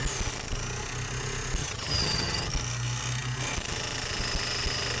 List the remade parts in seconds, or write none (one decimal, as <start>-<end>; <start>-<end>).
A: 1.6-2.5